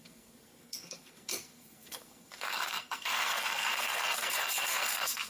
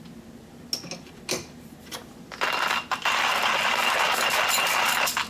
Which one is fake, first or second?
first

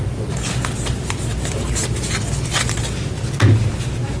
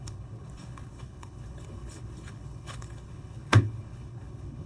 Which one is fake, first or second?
second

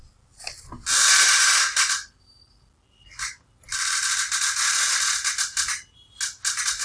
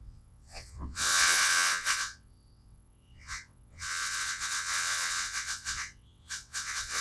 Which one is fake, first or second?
second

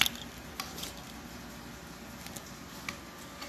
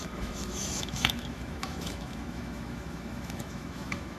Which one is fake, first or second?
second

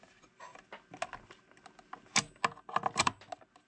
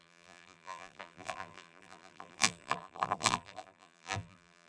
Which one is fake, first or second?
second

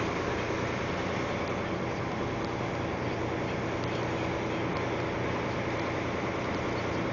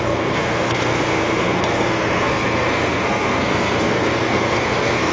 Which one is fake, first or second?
second